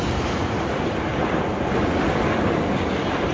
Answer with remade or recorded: recorded